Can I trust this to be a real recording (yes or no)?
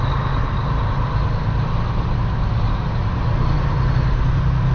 yes